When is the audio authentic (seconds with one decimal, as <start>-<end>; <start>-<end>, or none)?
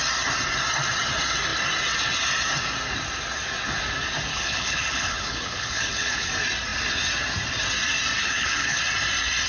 0.0-4.3; 6.3-8.2; 8.8-9.5